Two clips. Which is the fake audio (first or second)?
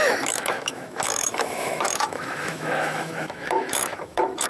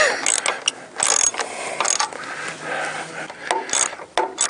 first